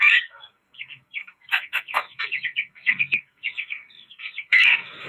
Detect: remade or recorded remade